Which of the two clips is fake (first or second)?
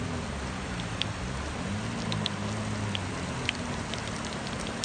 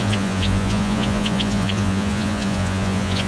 second